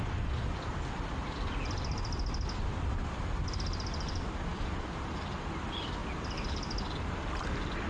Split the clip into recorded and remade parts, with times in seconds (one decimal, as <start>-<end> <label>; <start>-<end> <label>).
0.0-7.9 recorded